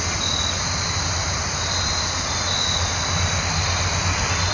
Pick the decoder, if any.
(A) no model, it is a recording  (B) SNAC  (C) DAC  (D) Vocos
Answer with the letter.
A